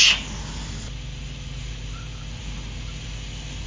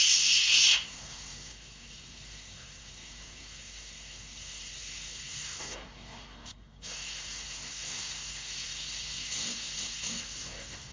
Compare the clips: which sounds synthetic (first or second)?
second